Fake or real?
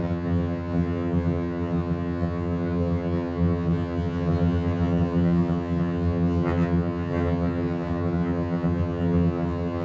fake